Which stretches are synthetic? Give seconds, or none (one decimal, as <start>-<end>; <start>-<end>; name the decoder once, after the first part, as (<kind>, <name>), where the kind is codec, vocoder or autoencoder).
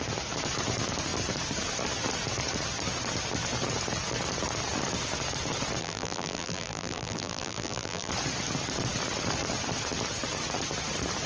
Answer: 5.8-8.1 (vocoder, BigVGAN v2)